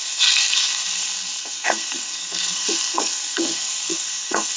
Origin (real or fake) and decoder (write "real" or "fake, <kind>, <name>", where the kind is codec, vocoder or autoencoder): fake, codec, SNAC